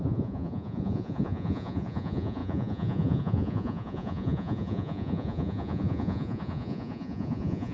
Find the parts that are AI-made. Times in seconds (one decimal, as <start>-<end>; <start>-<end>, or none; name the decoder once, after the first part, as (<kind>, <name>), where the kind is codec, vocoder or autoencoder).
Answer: 0.0-7.7 (vocoder, Vocos)